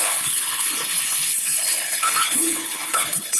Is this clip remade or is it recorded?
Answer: remade